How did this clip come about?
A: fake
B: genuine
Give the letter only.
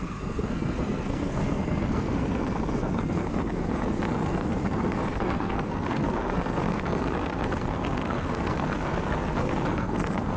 A